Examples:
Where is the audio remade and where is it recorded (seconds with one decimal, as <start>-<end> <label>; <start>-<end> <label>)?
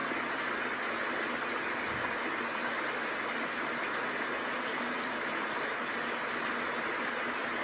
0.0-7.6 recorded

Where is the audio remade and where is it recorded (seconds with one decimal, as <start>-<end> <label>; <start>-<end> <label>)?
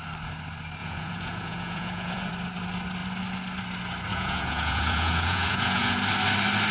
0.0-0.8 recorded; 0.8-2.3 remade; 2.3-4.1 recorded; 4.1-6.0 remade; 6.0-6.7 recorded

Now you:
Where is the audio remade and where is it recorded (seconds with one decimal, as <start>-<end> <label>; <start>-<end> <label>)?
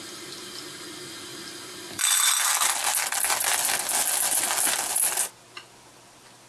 0.0-6.5 recorded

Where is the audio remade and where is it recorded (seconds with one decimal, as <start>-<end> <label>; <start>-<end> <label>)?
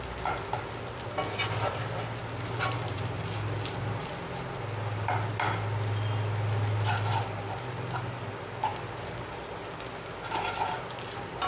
0.0-11.5 recorded